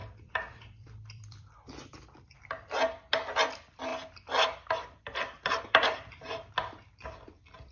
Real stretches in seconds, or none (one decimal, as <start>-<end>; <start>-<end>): 2.8-3.9; 6.5-7.7